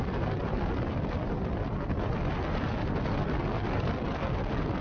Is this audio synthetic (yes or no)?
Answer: no